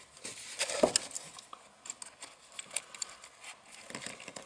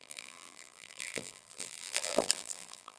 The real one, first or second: first